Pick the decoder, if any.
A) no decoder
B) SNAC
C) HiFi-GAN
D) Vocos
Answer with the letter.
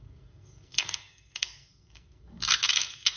B